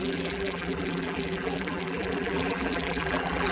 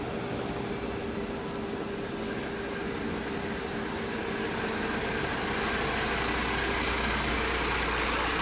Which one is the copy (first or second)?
first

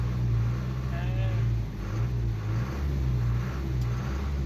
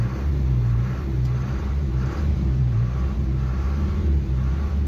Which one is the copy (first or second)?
second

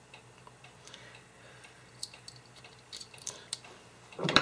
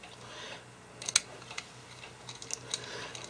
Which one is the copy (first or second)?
first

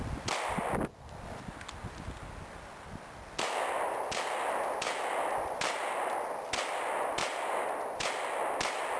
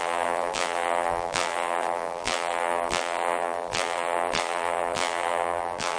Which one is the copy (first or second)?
second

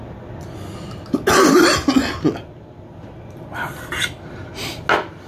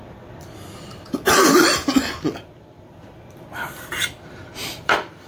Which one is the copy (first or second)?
second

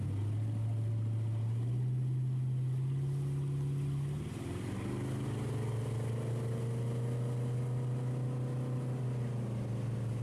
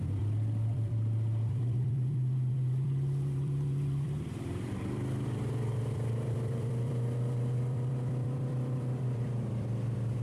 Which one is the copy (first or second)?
second